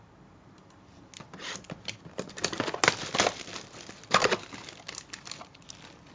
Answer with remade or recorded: recorded